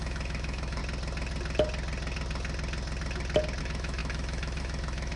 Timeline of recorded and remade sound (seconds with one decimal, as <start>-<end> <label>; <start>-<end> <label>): 0.0-0.8 remade; 0.8-3.6 recorded; 3.6-5.2 remade